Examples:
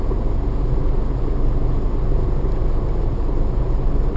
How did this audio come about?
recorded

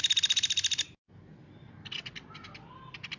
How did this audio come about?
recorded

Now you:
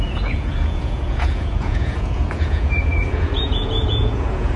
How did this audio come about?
remade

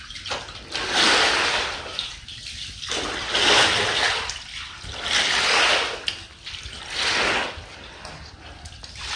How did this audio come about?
recorded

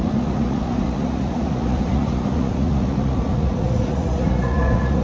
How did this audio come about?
remade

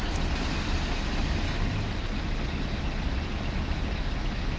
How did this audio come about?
recorded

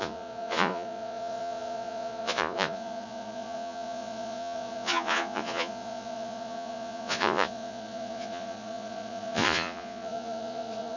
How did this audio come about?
remade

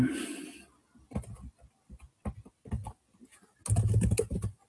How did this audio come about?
recorded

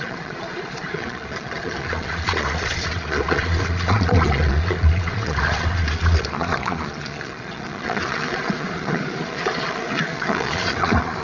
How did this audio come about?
remade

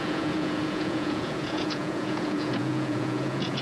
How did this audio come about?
remade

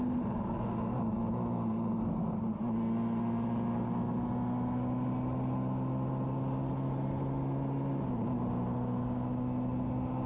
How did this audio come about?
recorded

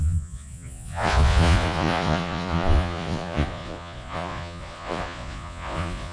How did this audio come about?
remade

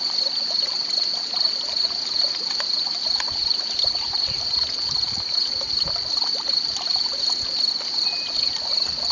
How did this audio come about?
recorded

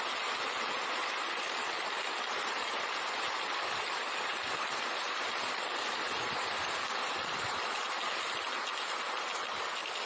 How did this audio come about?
recorded